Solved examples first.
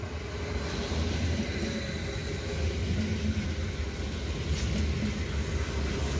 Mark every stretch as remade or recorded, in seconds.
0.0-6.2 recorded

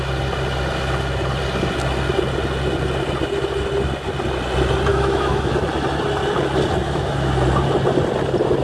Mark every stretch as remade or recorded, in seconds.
0.0-4.9 recorded; 4.9-5.5 remade; 5.5-6.8 recorded; 6.8-7.3 remade; 7.3-8.6 recorded

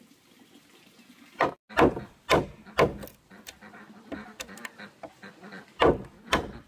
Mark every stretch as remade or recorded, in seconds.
0.0-6.7 recorded

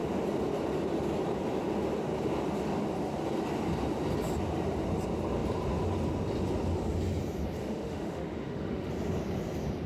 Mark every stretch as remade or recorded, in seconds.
0.0-7.6 recorded; 7.6-8.9 remade; 8.9-9.9 recorded

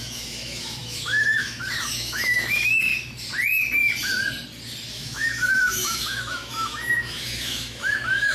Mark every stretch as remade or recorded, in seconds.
0.0-2.9 remade; 2.9-4.9 recorded; 4.9-8.3 remade

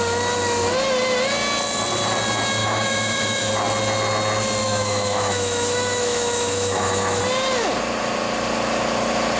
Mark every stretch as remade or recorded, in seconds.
0.0-2.6 recorded; 2.6-3.5 remade; 3.5-4.6 recorded; 4.6-7.2 remade; 7.2-9.4 recorded